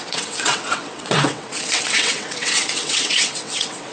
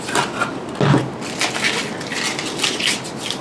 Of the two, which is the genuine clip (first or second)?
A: second